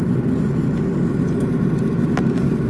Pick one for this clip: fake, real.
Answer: real